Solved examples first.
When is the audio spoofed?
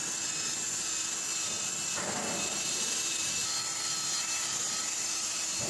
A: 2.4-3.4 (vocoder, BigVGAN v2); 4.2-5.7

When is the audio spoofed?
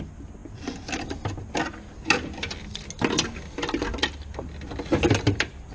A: none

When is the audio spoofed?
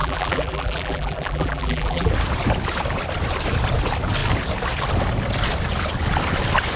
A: 0.0-2.1 (vocoder, BigVGAN v2)